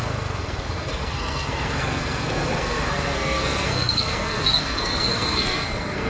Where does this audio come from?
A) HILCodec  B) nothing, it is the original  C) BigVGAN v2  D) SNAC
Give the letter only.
D